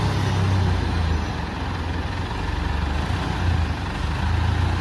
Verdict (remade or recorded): recorded